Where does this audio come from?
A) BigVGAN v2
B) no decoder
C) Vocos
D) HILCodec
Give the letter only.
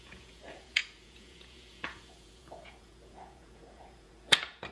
C